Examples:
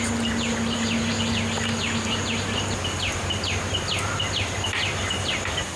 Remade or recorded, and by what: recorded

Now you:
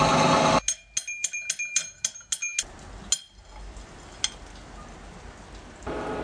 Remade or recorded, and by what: recorded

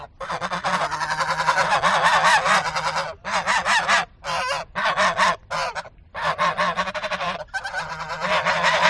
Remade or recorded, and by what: recorded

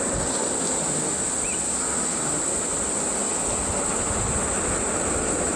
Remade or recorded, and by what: recorded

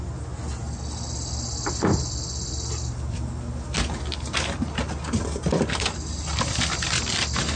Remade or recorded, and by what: recorded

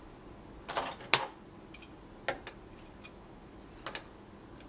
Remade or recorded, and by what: recorded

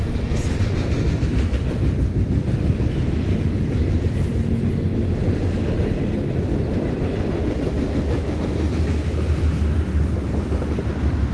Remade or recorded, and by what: recorded